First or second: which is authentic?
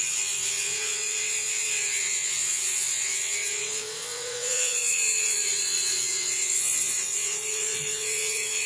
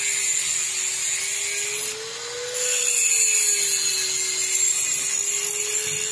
second